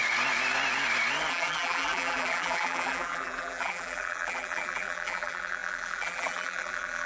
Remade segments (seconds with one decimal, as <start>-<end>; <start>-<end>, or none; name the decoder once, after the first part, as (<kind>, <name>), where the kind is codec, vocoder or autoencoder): 1.3-7.1 (vocoder, BigVGAN v2)